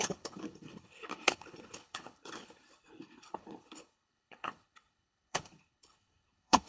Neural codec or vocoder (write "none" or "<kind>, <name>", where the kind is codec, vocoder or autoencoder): codec, HILCodec